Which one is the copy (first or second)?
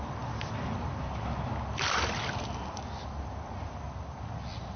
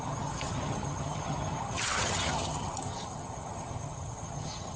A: second